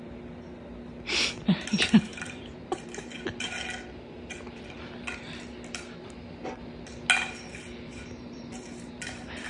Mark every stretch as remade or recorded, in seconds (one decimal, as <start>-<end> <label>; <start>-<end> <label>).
0.0-2.1 recorded; 2.1-3.2 remade; 3.2-7.9 recorded; 7.9-9.5 remade